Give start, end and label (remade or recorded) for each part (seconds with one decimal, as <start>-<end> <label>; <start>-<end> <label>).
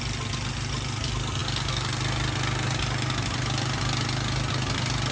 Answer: 0.0-5.1 recorded